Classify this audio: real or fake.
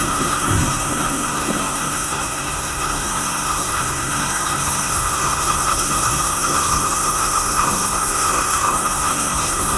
fake